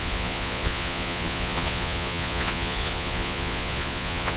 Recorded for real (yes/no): no